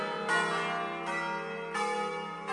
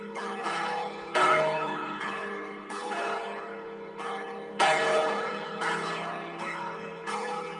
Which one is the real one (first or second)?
first